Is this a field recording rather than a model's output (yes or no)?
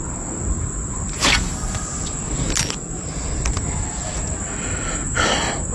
yes